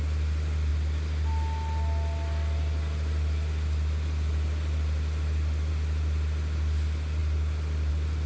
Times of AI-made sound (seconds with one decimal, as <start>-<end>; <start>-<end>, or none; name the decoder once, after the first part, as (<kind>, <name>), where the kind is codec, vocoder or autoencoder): none